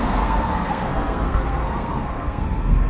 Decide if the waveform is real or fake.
fake